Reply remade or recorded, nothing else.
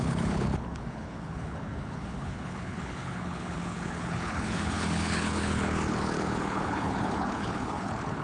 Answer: remade